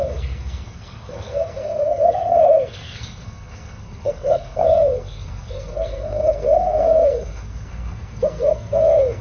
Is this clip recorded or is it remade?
remade